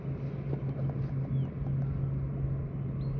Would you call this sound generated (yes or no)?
no